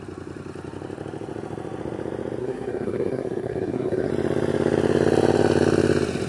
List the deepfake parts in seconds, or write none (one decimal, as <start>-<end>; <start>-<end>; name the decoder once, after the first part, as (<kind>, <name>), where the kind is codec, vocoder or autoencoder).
2.4-4.1 (codec, SNAC)